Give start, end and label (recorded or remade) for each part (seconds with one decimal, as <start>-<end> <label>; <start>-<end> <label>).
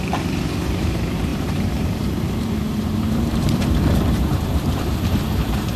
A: 0.0-5.8 remade